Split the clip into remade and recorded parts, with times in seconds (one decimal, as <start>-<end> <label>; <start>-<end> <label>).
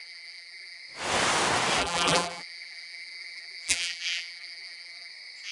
0.0-0.8 remade; 0.8-1.8 recorded; 1.8-5.1 remade; 5.1-5.5 recorded